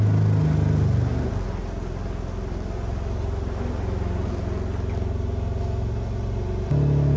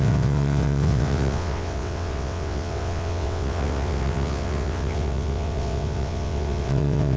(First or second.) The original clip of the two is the first